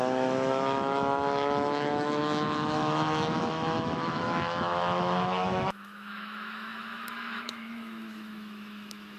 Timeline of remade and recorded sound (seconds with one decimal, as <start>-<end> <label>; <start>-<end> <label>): 0.0-9.2 remade